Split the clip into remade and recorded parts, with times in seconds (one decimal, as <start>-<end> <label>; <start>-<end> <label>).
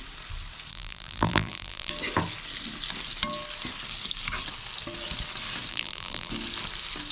0.0-0.7 recorded; 0.7-1.9 remade; 1.9-5.7 recorded; 5.7-6.3 remade; 6.3-7.1 recorded